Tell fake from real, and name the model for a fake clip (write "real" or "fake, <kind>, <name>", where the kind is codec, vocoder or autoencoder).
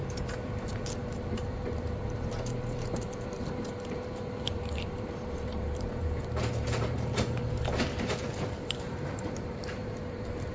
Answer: fake, vocoder, BigVGAN v2